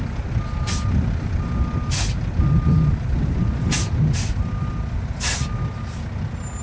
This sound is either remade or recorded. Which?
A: recorded